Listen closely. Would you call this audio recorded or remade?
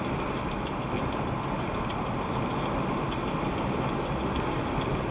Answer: recorded